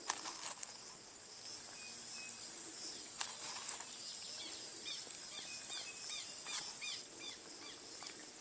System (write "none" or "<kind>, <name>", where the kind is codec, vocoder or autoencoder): none